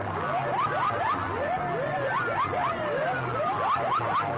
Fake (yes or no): no